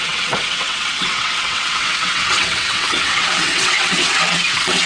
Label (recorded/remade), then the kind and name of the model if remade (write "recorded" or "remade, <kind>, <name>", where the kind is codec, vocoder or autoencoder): remade, vocoder, WaveNeXt